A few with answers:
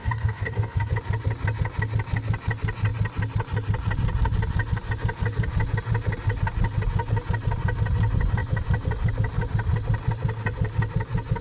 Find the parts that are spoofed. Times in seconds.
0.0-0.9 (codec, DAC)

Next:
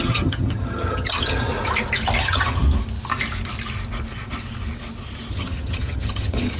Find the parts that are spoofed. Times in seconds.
0.0-1.5 (vocoder, HiFi-GAN); 2.2-2.6; 5.3-6.6

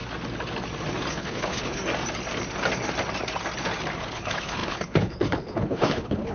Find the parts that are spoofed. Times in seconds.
1.1-1.8 (codec, HILCodec); 4.0-6.3

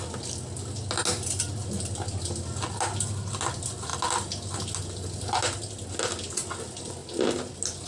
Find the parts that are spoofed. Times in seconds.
none

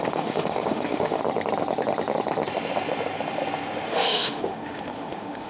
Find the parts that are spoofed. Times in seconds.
0.0-1.2 (autoencoder, DAC-VAE); 3.9-5.5

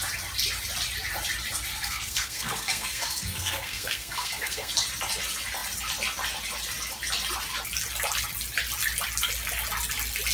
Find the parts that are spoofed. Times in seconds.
1.7-4.7 (codec, SNAC)

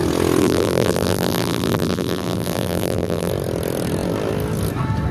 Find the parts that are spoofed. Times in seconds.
0.4-3.3 (vocoder, BigVGAN v2)